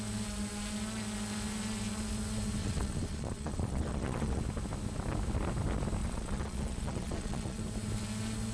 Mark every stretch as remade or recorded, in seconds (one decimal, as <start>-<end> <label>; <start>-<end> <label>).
0.0-2.6 recorded; 2.6-4.4 remade; 4.4-6.0 recorded; 6.0-7.6 remade; 7.6-8.5 recorded